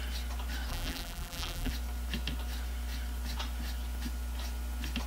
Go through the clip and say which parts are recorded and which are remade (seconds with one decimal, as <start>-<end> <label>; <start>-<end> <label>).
0.0-0.7 recorded; 0.7-1.7 remade; 1.7-5.1 recorded

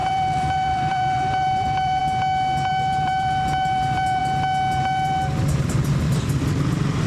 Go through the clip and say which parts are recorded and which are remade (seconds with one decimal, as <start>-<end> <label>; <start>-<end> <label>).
0.0-2.0 remade; 2.0-2.7 recorded; 2.7-4.2 remade; 4.2-4.8 recorded; 4.8-7.1 remade

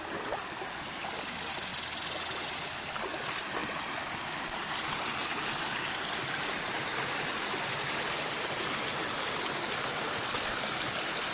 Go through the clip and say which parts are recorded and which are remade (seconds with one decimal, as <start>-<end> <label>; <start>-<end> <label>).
0.0-11.3 recorded